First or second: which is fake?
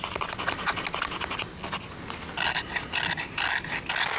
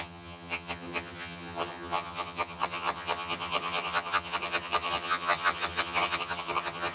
second